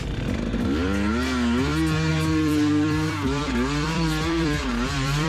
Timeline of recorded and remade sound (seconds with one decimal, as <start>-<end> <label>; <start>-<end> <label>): 0.0-2.1 recorded; 2.1-5.3 remade